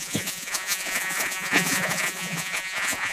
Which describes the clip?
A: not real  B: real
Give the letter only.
A